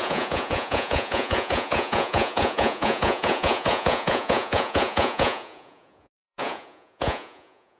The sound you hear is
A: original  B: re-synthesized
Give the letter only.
B